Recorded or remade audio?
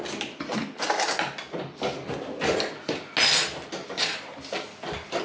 recorded